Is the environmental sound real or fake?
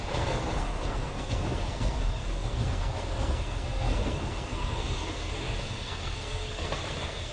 fake